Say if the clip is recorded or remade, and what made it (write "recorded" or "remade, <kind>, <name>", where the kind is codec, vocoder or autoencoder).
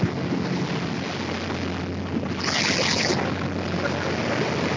recorded